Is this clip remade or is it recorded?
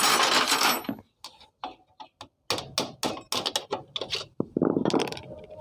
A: recorded